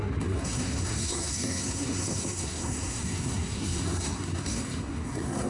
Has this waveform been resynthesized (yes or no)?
yes